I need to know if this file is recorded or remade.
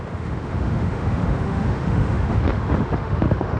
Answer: remade